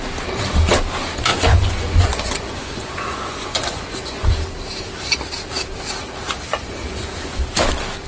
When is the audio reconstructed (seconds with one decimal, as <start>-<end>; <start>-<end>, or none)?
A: 1.3-4.3; 6.5-7.4